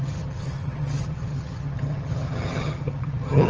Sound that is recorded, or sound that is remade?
remade